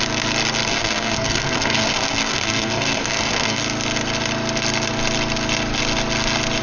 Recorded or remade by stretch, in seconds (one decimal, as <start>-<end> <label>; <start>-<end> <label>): 0.0-0.7 recorded; 0.7-3.6 remade; 3.6-6.6 recorded